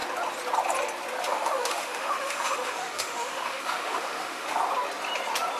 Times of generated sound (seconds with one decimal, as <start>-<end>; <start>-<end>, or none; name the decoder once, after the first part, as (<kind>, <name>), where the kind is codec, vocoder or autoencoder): 1.2-4.6 (autoencoder, DAC-VAE)